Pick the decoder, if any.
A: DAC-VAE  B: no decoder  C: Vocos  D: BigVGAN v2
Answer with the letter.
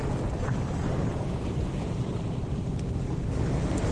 B